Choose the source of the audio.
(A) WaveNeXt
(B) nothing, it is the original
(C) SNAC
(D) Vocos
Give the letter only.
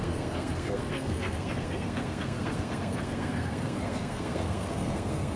C